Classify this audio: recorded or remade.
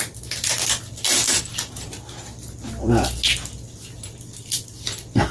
recorded